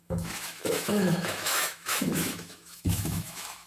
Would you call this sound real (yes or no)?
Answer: no